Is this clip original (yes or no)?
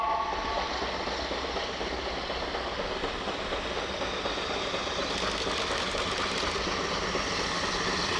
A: yes